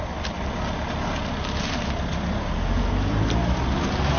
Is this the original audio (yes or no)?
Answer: yes